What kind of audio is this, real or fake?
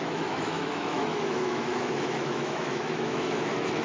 fake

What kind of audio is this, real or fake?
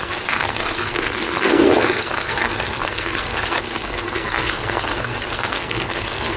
fake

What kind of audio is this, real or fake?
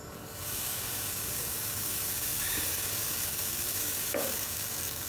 fake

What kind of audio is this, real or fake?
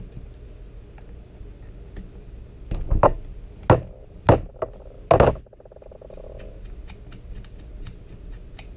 real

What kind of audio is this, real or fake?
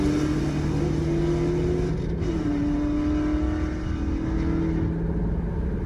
real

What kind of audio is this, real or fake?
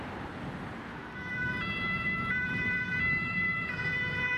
real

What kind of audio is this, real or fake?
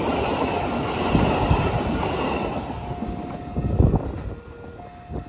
real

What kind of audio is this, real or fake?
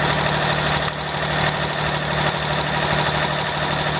real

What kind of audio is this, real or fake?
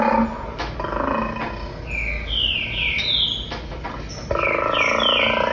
real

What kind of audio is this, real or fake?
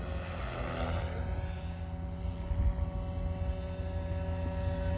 real